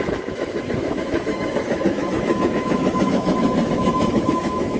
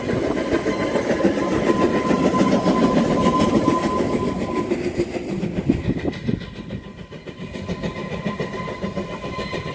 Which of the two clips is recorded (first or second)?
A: second